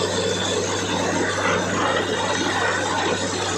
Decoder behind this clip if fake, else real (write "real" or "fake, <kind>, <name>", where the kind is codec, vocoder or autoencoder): real